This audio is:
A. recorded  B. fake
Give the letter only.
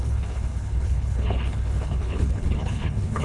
B